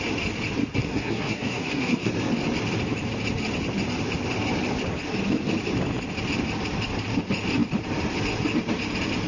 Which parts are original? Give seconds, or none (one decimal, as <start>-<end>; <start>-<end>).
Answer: 0.0-0.7; 2.1-9.3